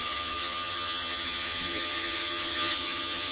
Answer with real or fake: fake